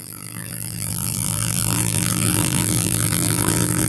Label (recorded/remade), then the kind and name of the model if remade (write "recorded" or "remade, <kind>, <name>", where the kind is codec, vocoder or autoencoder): remade, vocoder, BigVGAN v2